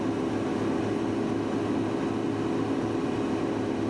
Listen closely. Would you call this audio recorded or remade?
recorded